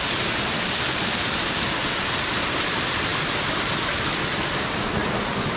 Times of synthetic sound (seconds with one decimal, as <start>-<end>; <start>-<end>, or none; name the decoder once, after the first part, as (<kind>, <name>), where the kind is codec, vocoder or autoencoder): none